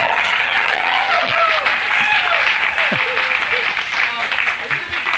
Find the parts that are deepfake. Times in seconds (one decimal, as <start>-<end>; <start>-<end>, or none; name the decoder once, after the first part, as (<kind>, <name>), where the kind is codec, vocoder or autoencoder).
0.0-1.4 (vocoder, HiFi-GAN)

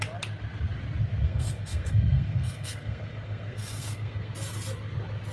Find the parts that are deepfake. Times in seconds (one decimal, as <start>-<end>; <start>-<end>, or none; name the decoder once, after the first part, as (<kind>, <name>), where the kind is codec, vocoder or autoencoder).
1.2-4.3 (codec, SNAC)

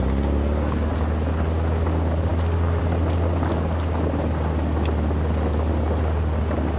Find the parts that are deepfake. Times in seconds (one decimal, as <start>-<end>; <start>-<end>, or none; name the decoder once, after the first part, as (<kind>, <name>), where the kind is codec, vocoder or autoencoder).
none

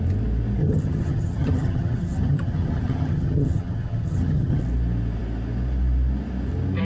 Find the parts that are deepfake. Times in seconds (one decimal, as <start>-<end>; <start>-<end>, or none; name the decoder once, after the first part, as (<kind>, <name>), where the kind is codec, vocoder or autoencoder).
0.6-4.6 (vocoder, HiFi-GAN)

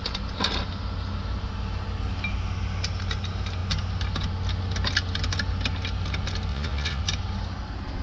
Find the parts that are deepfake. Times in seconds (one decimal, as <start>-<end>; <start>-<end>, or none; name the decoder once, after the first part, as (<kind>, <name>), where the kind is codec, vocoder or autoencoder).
6.5-7.0 (vocoder, Vocos)

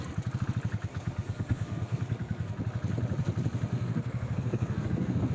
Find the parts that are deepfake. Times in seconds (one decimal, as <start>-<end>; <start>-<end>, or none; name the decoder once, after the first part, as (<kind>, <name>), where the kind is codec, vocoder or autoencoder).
0.9-2.6 (codec, SNAC); 3.7-5.3